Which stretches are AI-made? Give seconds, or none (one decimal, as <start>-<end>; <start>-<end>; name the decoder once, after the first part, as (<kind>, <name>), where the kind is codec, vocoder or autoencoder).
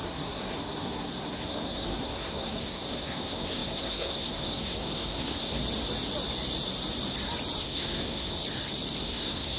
0.0-5.6 (codec, SNAC); 7.6-8.4; 9.0-9.6